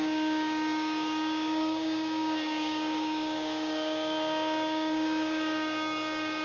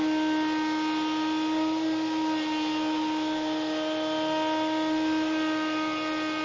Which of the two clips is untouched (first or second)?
second